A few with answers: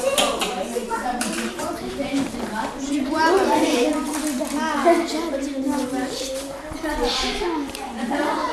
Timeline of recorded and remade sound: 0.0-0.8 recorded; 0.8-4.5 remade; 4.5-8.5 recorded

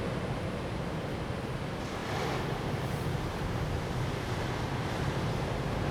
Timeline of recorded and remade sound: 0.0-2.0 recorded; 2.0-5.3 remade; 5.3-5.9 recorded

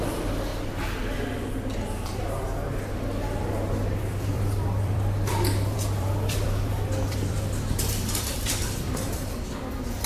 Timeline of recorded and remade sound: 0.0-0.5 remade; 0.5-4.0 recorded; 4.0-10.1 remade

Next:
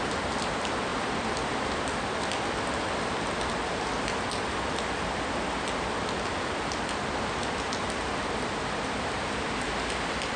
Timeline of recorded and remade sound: 0.0-0.9 recorded; 0.9-1.7 remade; 1.7-10.4 recorded